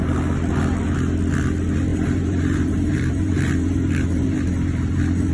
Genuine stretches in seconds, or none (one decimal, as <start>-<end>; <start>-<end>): 0.0-1.9